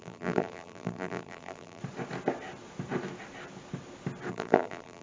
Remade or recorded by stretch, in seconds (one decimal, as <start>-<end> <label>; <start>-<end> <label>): 0.0-1.8 remade; 1.8-4.3 recorded; 4.3-5.0 remade